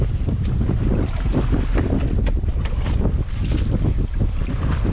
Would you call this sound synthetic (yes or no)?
no